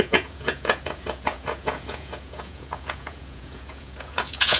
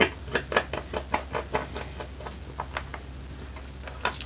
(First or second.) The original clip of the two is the second